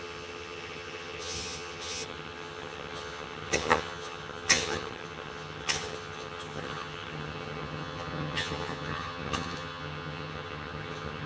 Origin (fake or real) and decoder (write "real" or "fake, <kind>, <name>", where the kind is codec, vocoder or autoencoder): fake, vocoder, HiFi-GAN